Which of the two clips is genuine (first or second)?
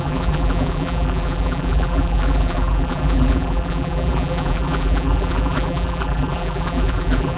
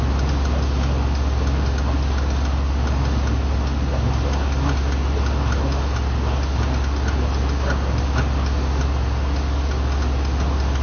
second